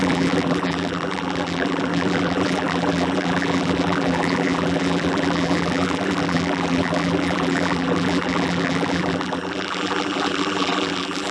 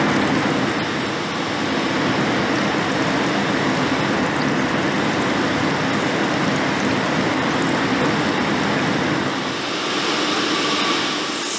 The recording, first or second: second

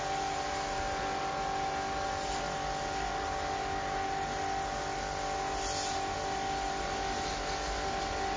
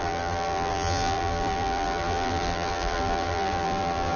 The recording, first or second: first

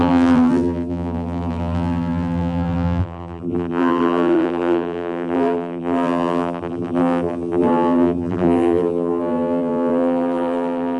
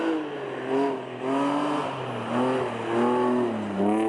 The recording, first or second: second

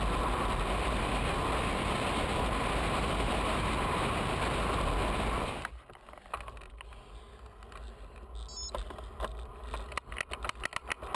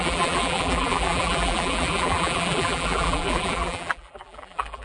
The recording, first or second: first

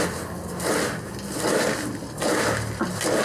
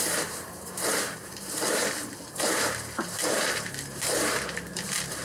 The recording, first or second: first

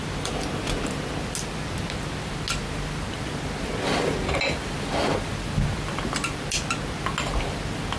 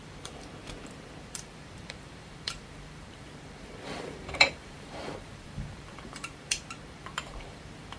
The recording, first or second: first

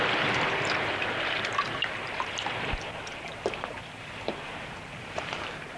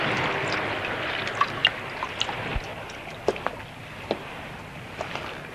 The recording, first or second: second